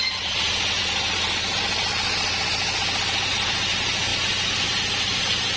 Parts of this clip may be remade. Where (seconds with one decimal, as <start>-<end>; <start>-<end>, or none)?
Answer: none